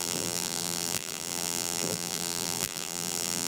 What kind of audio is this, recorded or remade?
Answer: remade